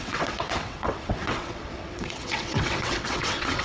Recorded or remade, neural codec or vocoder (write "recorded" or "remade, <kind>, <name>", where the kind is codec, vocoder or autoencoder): remade, vocoder, WaveNeXt